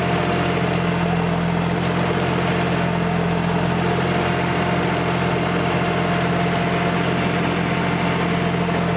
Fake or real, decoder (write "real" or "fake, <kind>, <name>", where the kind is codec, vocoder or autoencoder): real